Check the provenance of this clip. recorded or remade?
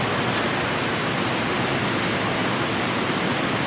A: recorded